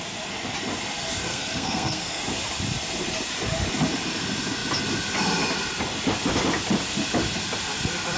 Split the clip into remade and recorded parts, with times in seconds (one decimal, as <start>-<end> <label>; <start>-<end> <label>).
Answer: 0.0-1.3 recorded; 1.3-2.2 remade; 2.2-8.2 recorded